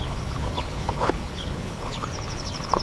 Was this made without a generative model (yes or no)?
no